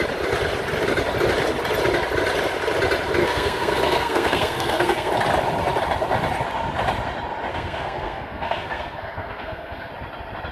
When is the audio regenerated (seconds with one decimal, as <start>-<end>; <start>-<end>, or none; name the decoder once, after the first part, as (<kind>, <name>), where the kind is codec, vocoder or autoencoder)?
3.2-5.1 (codec, SNAC); 7.5-9.9